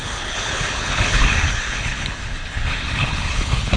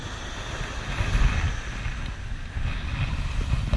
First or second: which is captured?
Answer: second